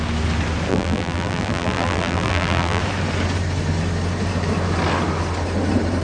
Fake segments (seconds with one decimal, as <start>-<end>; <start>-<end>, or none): 0.7-2.8